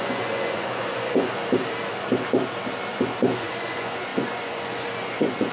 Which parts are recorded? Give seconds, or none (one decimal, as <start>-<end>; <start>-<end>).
1.3-2.9